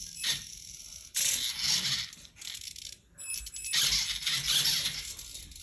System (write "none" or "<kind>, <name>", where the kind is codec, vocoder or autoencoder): none